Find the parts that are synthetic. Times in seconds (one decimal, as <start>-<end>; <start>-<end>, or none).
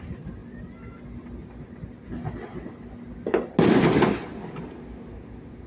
none